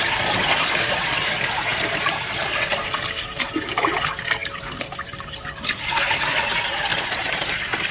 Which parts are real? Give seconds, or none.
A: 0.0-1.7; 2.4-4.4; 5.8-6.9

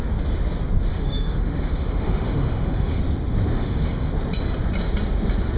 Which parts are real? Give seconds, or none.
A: 0.0-0.9; 3.0-3.5; 4.1-5.6